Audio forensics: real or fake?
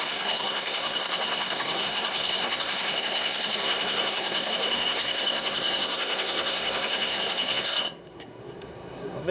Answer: fake